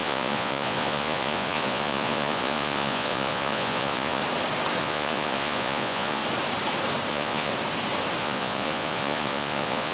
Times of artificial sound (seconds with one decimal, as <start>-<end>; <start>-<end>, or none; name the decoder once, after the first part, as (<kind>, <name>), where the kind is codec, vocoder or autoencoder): 0.0-4.2 (vocoder, Vocos); 4.8-6.2; 7.1-7.5; 8.2-9.9